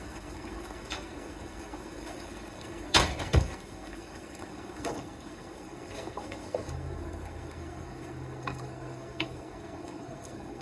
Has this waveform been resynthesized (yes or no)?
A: yes